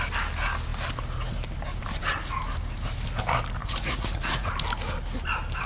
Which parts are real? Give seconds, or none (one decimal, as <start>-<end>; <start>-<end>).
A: 0.0-3.6; 4.5-5.7